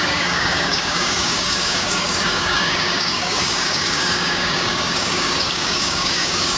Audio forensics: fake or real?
fake